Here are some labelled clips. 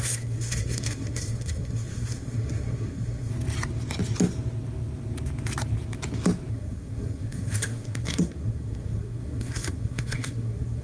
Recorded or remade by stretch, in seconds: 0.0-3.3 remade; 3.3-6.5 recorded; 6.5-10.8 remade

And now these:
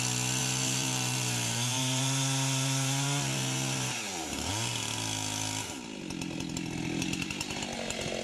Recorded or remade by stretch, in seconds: 0.0-0.4 recorded; 0.4-4.5 remade; 4.5-8.2 recorded

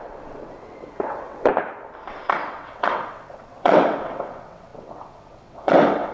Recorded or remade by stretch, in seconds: 0.0-1.5 remade; 1.5-2.1 recorded; 2.1-6.1 remade